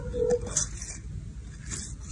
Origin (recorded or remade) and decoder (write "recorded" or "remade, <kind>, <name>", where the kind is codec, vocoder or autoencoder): recorded